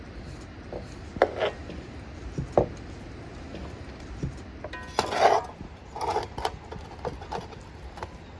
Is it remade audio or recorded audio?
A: recorded